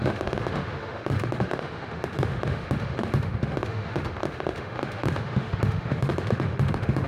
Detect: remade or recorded remade